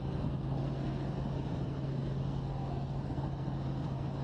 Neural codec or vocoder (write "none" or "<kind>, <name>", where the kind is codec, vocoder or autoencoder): codec, SNAC